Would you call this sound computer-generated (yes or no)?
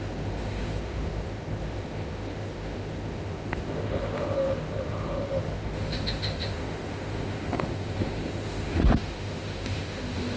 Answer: yes